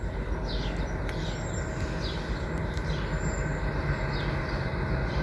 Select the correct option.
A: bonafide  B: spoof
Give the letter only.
A